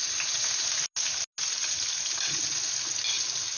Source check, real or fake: real